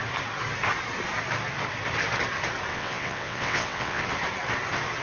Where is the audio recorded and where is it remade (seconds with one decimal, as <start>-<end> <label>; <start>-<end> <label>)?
0.0-2.7 recorded; 2.7-4.0 remade; 4.0-5.0 recorded

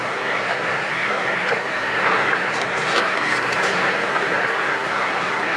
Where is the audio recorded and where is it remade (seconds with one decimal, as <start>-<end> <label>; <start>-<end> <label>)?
0.0-5.6 remade

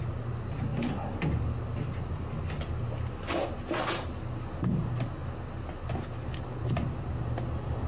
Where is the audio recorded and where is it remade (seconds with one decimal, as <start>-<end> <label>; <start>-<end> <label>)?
0.0-7.9 recorded

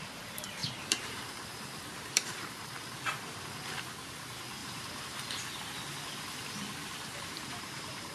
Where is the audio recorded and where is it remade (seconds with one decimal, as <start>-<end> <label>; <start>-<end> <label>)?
0.0-0.6 recorded; 0.6-2.5 remade; 2.5-4.6 recorded; 4.6-5.3 remade; 5.3-6.8 recorded; 6.8-8.1 remade

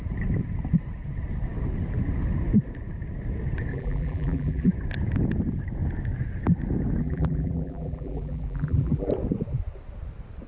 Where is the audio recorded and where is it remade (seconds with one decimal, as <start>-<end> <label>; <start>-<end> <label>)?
0.0-3.7 recorded; 3.7-4.7 remade; 4.7-7.0 recorded; 7.0-9.1 remade; 9.1-10.5 recorded